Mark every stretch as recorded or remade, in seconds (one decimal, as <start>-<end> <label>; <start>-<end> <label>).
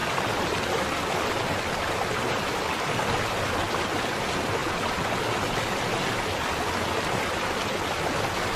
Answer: 0.0-8.6 recorded